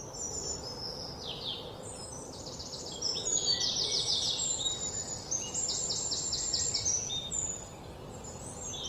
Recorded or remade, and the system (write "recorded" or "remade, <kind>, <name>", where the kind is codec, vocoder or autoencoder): recorded